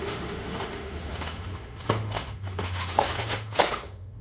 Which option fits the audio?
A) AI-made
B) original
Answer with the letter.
A